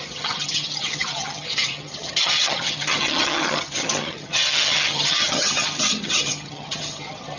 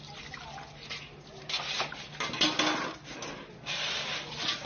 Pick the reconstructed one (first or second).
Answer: first